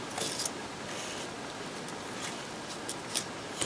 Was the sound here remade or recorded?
recorded